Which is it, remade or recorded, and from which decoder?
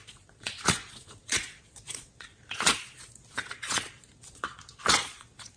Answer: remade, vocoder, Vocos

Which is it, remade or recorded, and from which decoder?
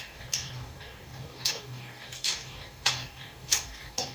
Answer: remade, codec, DAC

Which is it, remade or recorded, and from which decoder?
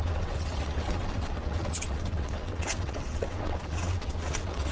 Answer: remade, vocoder, WaveNeXt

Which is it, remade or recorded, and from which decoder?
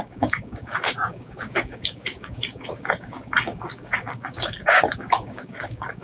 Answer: remade, codec, DAC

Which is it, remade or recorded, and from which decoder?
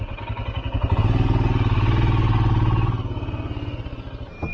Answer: recorded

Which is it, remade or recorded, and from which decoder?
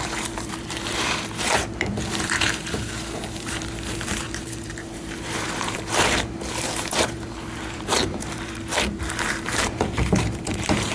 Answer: remade, vocoder, BigVGAN v2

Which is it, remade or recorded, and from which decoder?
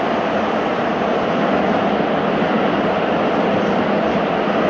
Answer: recorded